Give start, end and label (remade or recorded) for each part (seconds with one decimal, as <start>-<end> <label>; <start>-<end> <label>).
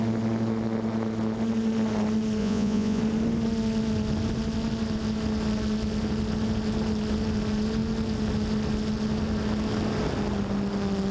0.0-2.4 recorded; 2.4-3.0 remade; 3.0-11.1 recorded